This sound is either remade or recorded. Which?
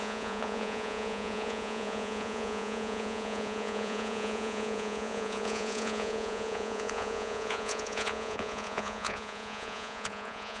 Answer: remade